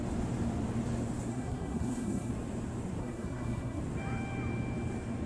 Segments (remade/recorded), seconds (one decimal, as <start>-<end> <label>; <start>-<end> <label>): 0.0-1.3 recorded; 1.3-2.3 remade; 2.3-3.0 recorded; 3.0-3.8 remade; 3.8-5.3 recorded